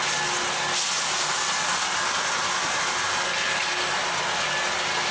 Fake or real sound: real